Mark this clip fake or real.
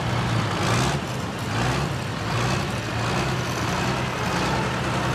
real